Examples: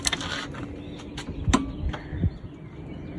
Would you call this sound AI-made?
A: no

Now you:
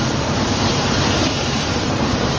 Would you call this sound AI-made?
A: yes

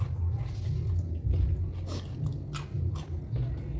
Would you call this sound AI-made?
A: no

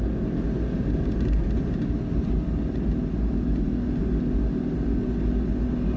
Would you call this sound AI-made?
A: no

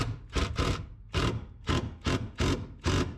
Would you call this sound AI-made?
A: no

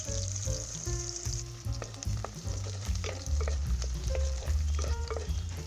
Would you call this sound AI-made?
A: yes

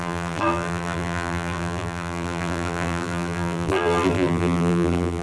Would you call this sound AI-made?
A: yes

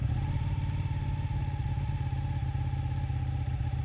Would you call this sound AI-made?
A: no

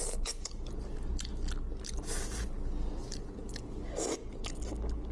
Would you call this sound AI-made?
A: no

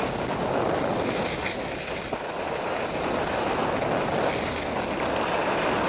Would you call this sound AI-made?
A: no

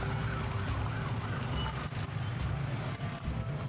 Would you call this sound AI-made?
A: no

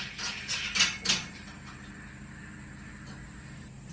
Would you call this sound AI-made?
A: no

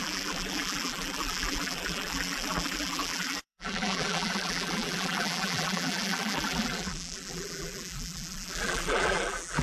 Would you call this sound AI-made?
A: yes